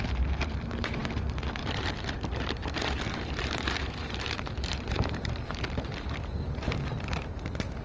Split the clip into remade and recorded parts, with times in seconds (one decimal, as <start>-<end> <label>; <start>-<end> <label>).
0.0-7.8 remade